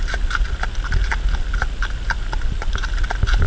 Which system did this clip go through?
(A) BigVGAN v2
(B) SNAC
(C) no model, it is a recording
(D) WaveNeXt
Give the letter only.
C